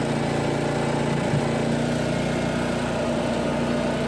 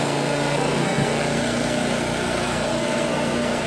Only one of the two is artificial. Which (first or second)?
second